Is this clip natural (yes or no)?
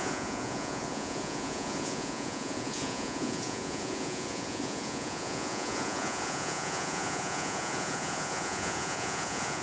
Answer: no